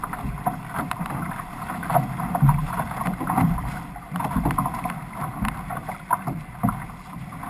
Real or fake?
real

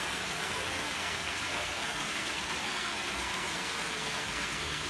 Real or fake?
fake